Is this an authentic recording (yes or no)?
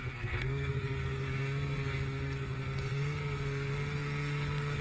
no